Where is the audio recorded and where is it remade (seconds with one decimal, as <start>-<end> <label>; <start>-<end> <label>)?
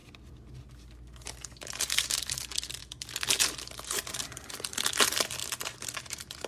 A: 0.0-1.9 recorded; 1.9-2.8 remade; 2.8-4.1 recorded; 4.1-5.4 remade; 5.4-6.0 recorded; 6.0-6.5 remade